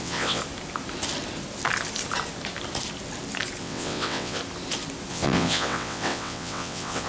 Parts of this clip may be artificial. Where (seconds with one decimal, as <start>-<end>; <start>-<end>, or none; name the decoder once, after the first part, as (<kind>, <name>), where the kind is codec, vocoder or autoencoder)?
0.0-0.4 (vocoder, WaveNeXt); 3.6-4.4; 5.1-7.1